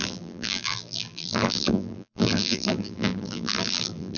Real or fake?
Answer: fake